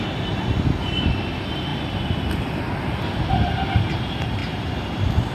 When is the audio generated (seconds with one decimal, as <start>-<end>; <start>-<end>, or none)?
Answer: none

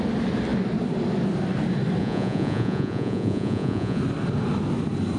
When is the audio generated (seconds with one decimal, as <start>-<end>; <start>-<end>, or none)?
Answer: 2.0-4.0

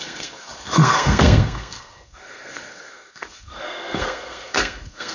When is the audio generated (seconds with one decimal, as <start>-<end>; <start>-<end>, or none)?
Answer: 0.0-5.1

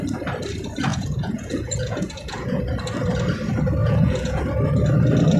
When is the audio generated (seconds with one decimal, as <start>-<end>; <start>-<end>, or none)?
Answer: 0.9-2.6; 3.8-4.4

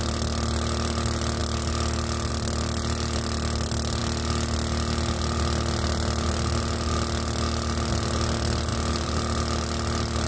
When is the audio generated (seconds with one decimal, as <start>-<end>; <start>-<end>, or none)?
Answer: none